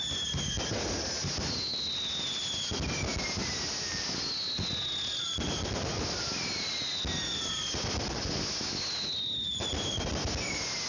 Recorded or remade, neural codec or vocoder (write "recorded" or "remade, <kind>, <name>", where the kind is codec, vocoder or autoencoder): recorded